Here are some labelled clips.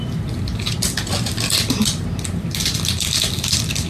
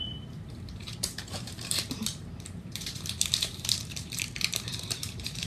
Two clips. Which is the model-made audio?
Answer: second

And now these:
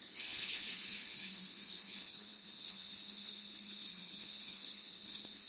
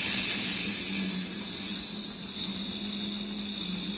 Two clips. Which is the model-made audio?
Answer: first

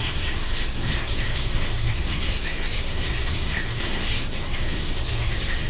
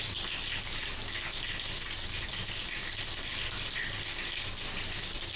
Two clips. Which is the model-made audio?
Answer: first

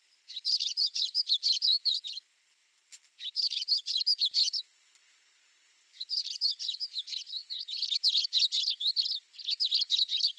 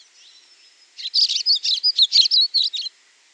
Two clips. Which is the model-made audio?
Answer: first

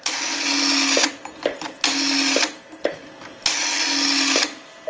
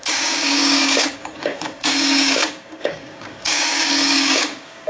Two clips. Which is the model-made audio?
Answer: second